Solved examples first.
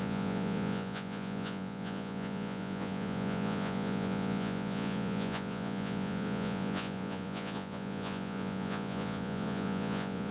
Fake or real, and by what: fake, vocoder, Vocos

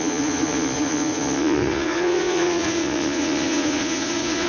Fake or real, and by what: fake, vocoder, Vocos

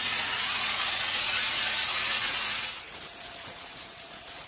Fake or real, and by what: fake, vocoder, Vocos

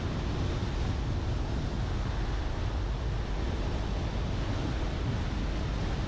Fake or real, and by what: real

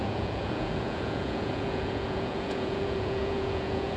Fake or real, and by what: fake, vocoder, Vocos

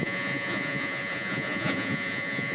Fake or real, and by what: fake, vocoder, Vocos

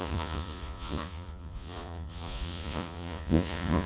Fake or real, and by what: fake, vocoder, Vocos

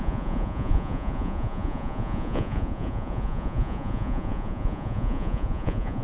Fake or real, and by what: fake, vocoder, Vocos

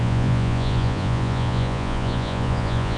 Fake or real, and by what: fake, vocoder, Vocos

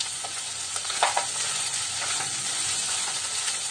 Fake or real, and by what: fake, vocoder, Vocos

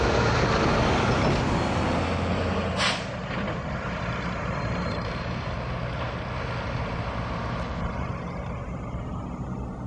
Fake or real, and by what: real